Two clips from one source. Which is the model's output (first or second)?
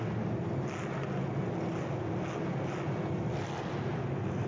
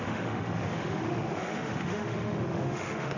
second